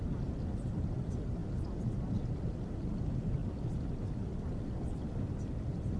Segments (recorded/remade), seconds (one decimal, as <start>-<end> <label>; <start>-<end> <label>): 0.0-6.0 recorded